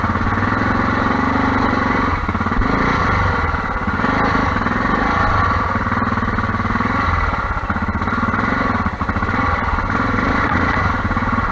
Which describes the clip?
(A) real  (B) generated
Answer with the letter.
A